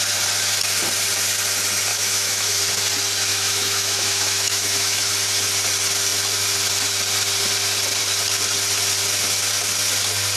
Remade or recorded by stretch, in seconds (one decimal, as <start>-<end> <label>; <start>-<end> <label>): 0.0-1.9 recorded; 1.9-2.6 remade; 2.6-3.3 recorded; 3.3-5.1 remade; 5.1-10.4 recorded